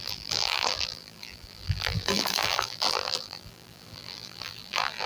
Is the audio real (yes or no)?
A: no